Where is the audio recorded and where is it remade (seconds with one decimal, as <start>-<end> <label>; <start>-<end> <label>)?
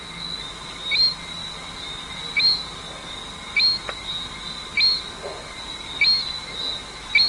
0.0-7.3 recorded